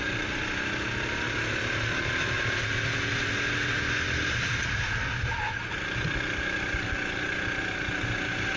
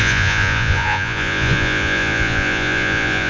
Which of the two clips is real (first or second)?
first